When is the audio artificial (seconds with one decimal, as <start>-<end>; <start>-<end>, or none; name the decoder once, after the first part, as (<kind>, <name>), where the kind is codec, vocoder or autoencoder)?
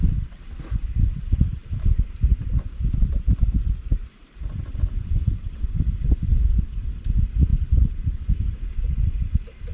1.6-6.7 (vocoder, BigVGAN v2)